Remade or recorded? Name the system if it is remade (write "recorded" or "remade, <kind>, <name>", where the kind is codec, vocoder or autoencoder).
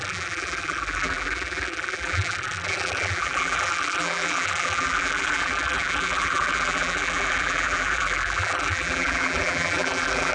remade, vocoder, BigVGAN v2